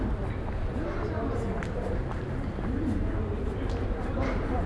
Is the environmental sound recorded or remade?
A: recorded